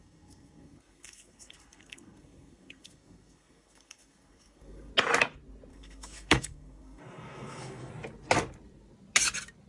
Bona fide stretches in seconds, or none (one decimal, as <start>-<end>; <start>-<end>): 4.9-5.7; 7.9-9.7